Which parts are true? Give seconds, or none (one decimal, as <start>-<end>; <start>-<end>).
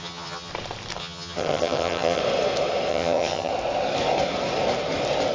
0.5-1.0; 2.2-2.9; 3.5-5.3